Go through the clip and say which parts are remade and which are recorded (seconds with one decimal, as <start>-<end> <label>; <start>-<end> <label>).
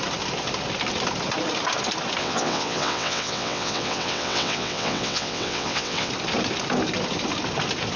0.0-2.2 recorded; 2.2-6.1 remade; 6.1-8.0 recorded